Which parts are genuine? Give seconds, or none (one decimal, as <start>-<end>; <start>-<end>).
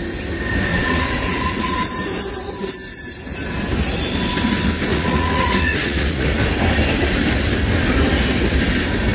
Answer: 0.0-0.7; 1.9-4.9; 6.3-9.1